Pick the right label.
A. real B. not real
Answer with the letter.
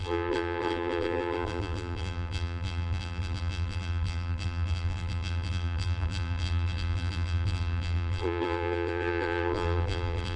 B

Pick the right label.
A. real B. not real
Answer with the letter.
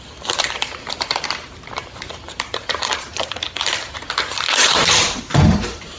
B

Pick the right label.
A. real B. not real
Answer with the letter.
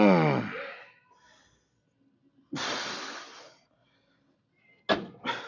A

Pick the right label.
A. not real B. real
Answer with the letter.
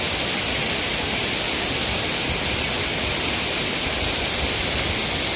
B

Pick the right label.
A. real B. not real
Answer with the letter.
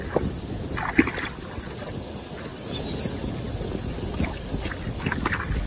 A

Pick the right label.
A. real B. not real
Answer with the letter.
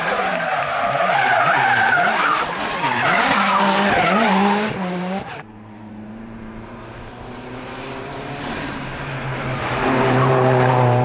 B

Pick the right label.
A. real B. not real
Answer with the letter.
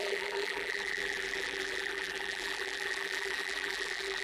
B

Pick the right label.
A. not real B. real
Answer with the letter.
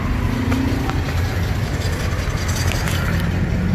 B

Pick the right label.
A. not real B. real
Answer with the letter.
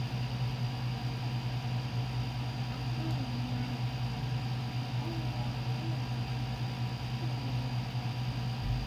B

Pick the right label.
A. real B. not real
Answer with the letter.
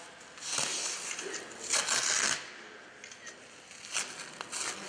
A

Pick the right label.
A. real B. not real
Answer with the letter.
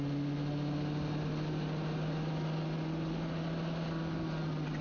A